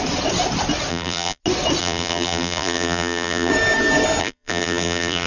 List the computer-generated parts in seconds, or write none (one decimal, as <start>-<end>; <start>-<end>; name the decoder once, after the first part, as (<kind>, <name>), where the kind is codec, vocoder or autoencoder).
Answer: 0.9-1.4 (vocoder, BigVGAN v2); 1.8-3.5; 4.2-5.3